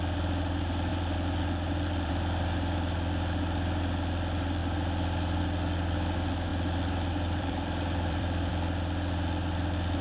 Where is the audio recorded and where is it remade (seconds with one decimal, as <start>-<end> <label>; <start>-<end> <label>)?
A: 0.0-0.9 recorded; 0.9-2.1 remade; 2.1-6.5 recorded; 6.5-8.5 remade; 8.5-10.0 recorded